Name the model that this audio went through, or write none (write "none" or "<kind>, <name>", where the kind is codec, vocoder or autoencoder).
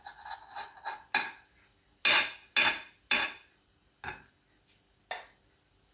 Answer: none